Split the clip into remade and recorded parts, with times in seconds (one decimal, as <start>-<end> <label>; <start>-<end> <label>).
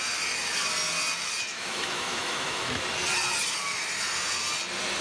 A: 0.0-1.5 recorded; 1.5-2.8 remade; 2.8-5.0 recorded